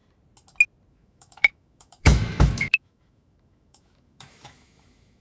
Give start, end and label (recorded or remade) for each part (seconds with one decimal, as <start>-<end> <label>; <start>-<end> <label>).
0.0-0.9 recorded; 0.9-5.2 remade